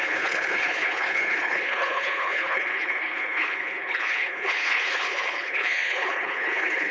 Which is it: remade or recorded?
remade